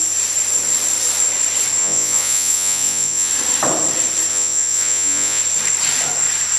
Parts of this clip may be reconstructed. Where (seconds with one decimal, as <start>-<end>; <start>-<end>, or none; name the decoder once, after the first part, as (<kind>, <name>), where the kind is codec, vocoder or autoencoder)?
1.8-3.3 (vocoder, Vocos); 4.3-5.4